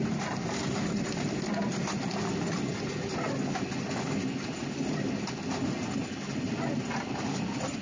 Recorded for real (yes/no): yes